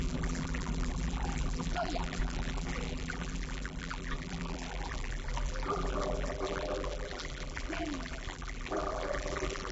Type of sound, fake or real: fake